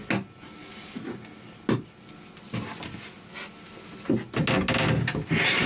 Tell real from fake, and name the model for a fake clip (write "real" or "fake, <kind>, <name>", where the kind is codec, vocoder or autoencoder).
real